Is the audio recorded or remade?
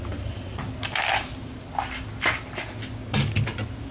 recorded